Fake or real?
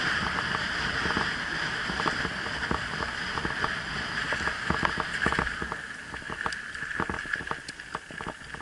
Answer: real